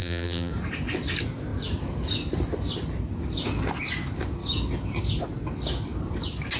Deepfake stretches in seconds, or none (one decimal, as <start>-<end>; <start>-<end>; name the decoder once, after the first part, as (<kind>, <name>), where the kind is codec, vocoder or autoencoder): 0.0-0.5 (vocoder, BigVGAN v2)